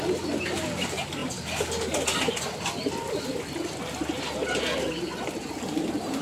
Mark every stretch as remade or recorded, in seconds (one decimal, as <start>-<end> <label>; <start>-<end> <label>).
0.0-6.2 recorded